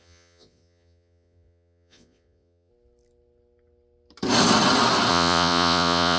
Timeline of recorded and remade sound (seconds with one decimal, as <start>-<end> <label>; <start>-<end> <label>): 0.0-2.7 remade; 2.7-5.1 recorded; 5.1-6.2 remade